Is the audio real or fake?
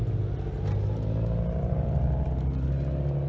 real